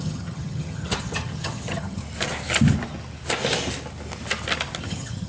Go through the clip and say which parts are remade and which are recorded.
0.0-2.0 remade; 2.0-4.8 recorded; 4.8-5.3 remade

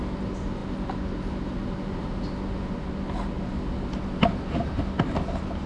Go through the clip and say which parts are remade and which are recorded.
0.0-5.7 recorded

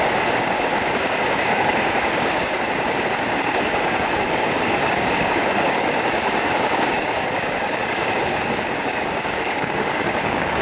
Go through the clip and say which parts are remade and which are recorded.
0.0-10.6 remade

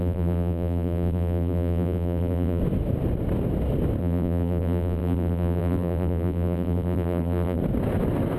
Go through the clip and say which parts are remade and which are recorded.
0.0-2.6 remade; 2.6-4.0 recorded; 4.0-7.6 remade; 7.6-8.4 recorded

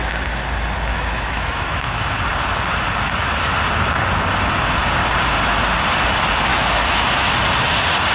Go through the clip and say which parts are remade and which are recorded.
0.0-0.9 recorded; 0.9-2.2 remade; 2.2-6.5 recorded; 6.5-7.3 remade; 7.3-8.1 recorded

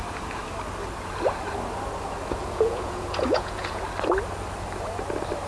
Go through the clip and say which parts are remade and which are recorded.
0.0-2.4 recorded; 2.4-3.8 remade; 3.8-5.5 recorded